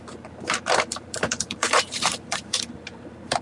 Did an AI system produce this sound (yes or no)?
yes